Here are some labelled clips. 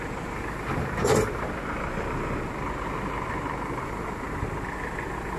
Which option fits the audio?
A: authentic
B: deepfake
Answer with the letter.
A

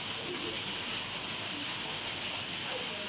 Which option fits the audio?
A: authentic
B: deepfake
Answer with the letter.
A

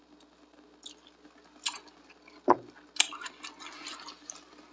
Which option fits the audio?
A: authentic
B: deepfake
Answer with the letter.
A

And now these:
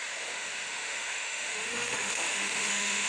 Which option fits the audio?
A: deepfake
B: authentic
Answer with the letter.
A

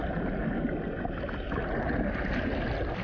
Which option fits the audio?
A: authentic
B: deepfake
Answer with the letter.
A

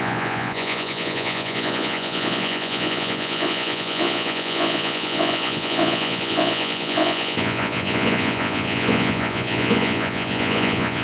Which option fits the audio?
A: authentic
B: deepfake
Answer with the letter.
B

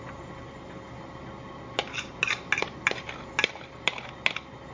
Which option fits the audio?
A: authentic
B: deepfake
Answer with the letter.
A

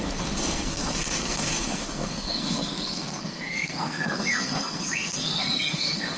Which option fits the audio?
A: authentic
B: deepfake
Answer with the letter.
B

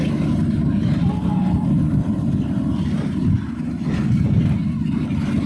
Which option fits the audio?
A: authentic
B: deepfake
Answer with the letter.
A